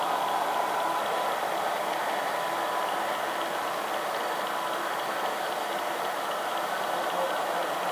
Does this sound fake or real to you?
real